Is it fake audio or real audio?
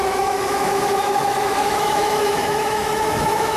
fake